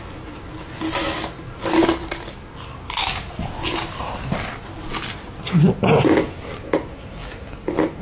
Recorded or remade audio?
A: recorded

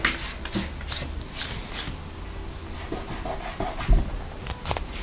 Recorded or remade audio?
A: recorded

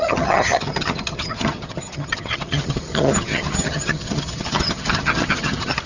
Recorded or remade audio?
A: remade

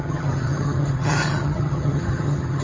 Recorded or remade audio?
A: remade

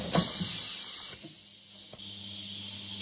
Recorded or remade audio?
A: recorded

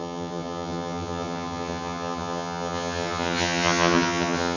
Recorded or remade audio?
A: remade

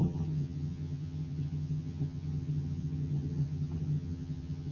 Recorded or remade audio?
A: remade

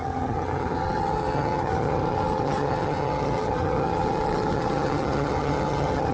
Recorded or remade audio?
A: remade